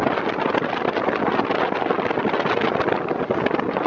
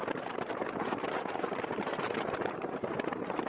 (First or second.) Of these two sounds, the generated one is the second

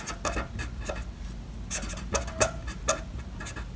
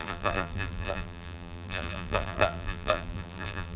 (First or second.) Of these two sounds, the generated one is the second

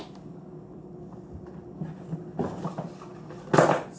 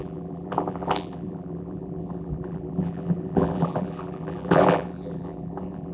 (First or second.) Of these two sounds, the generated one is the second